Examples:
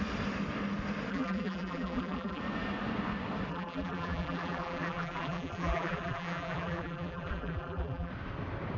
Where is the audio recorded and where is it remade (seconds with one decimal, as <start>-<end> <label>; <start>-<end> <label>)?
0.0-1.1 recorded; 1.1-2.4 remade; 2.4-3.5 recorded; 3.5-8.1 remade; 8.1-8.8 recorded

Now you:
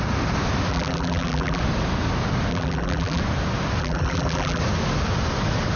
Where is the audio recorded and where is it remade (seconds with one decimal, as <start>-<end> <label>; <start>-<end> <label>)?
0.0-0.7 recorded; 0.7-1.6 remade; 1.6-2.5 recorded; 2.5-3.2 remade; 3.2-3.8 recorded; 3.8-4.6 remade; 4.6-5.8 recorded

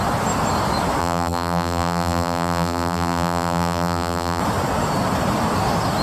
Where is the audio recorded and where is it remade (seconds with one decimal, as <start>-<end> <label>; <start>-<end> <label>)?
0.0-1.0 recorded; 1.0-4.4 remade; 4.4-6.0 recorded